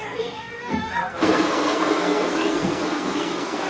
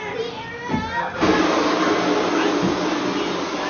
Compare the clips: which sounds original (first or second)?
second